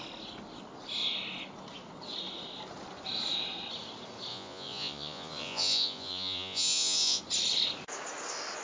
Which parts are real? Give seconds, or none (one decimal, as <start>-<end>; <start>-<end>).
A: 0.0-4.3; 7.2-8.6